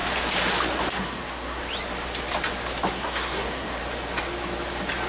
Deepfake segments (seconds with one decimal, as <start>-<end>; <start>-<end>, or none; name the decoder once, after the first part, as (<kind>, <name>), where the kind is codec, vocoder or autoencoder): 0.9-1.6 (codec, SNAC); 2.9-3.8